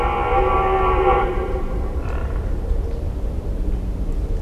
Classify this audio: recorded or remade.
remade